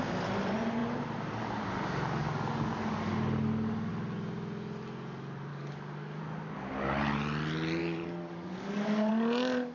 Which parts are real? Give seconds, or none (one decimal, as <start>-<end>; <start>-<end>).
0.0-5.5; 6.2-7.8; 9.1-9.7